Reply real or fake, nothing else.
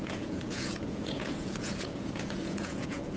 fake